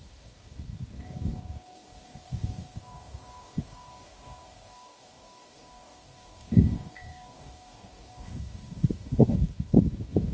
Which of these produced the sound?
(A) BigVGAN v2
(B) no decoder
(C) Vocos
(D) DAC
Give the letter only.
D